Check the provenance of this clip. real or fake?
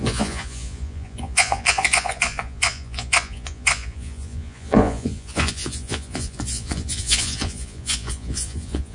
fake